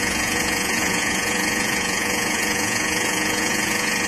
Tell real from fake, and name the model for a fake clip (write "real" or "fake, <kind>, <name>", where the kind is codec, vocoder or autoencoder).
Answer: fake, vocoder, Vocos